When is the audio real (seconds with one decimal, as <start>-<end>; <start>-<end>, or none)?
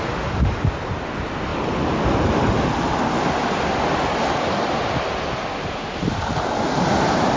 0.0-7.4